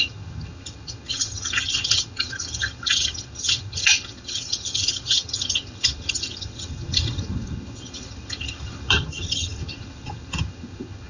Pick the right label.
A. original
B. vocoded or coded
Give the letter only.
B